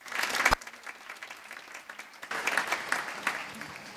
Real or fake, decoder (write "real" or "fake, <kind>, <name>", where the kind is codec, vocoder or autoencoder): real